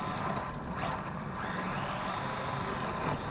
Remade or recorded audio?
recorded